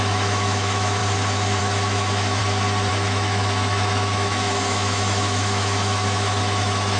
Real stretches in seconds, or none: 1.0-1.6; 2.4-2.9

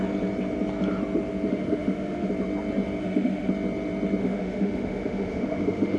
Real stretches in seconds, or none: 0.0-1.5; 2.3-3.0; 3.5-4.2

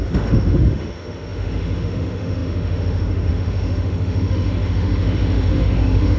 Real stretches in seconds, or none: none